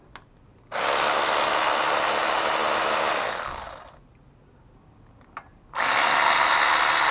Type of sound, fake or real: real